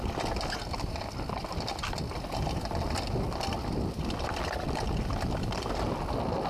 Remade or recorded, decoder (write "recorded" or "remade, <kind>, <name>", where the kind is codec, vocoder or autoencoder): recorded